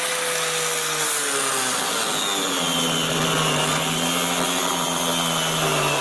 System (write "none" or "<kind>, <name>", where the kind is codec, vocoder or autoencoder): none